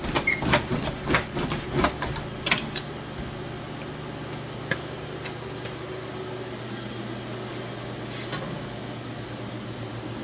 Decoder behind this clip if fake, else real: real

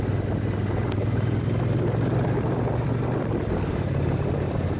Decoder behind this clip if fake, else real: real